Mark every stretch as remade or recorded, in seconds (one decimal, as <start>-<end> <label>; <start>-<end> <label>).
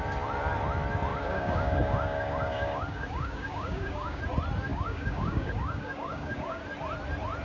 0.0-1.1 recorded; 1.1-4.2 remade; 4.2-4.7 recorded; 4.7-6.6 remade; 6.6-7.4 recorded